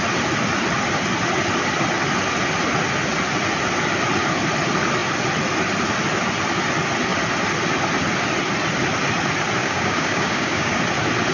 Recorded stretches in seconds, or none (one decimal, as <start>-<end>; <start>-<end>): 0.0-9.6; 10.8-11.3